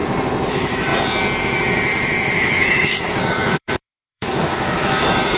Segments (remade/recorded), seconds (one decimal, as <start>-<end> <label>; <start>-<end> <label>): 0.0-0.5 recorded; 0.5-0.9 remade; 0.9-1.4 recorded; 1.4-5.4 remade